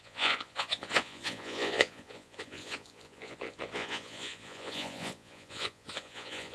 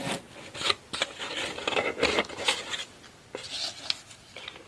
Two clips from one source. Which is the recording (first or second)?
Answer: second